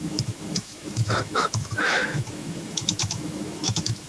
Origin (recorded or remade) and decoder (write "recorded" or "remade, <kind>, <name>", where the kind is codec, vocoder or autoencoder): remade, autoencoder, DAC-VAE